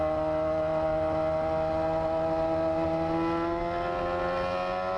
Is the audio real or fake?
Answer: real